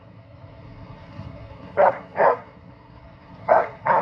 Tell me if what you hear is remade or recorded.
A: remade